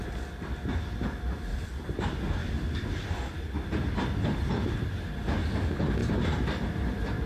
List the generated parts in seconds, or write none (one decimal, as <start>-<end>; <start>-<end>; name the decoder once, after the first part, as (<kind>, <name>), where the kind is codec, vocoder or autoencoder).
2.4-3.3 (vocoder, BigVGAN v2); 6.0-7.3